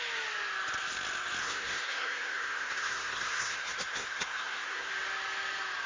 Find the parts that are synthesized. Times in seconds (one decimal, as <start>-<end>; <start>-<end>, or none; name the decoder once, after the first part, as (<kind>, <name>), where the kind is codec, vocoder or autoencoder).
1.4-4.9 (codec, SNAC)